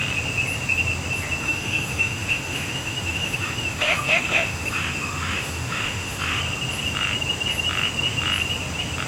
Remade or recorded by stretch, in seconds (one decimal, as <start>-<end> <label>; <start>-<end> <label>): 0.0-1.4 recorded; 1.4-6.4 remade; 6.4-9.1 recorded